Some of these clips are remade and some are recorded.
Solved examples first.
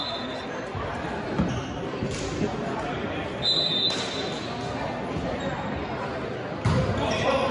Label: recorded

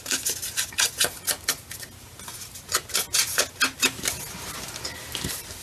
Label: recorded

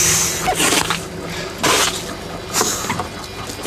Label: recorded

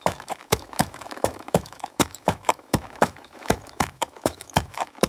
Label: remade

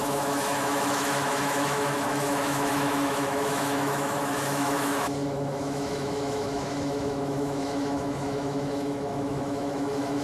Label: remade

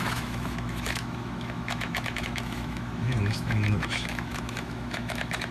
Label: remade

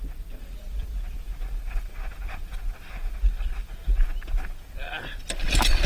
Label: recorded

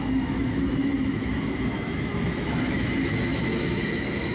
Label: remade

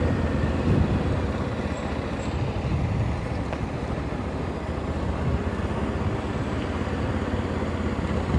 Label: recorded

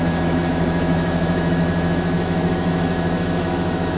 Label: remade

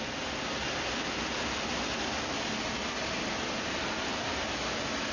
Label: recorded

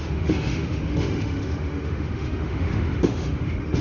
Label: remade